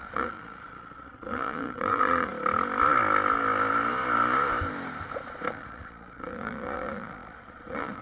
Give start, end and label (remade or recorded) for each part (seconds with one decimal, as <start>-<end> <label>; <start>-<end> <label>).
0.0-2.3 remade; 2.3-5.5 recorded; 5.5-8.0 remade